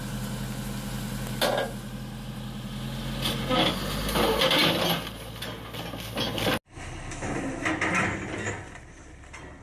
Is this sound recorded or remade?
recorded